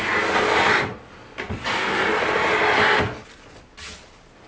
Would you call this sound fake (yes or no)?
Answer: no